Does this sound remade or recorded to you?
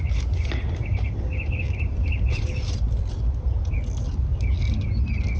recorded